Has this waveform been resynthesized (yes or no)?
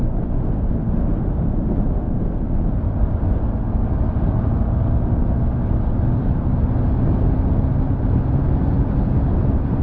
no